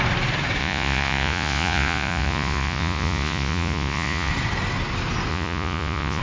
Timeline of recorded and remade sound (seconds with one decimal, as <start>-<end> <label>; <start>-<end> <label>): 0.0-0.6 recorded; 0.6-4.3 remade; 4.3-5.3 recorded; 5.3-6.2 remade